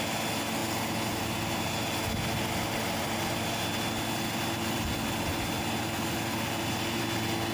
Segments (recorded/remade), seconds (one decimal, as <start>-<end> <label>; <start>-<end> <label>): 0.0-7.5 recorded